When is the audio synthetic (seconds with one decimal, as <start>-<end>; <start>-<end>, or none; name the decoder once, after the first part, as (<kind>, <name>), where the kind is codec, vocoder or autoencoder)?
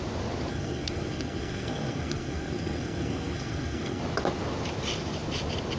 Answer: 0.5-4.0 (codec, SNAC)